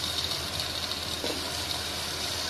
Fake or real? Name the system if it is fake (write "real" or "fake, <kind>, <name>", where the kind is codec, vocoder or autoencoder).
real